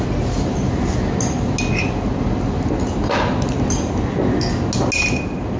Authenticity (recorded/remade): recorded